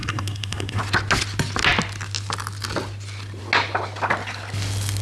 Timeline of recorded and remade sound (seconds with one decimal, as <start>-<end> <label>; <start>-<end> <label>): 0.0-0.8 remade; 0.8-5.0 recorded